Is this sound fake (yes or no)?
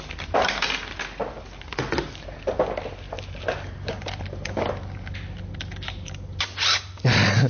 no